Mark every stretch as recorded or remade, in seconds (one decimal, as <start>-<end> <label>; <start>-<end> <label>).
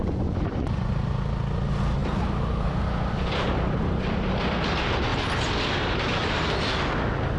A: 0.0-0.9 remade; 0.9-7.4 recorded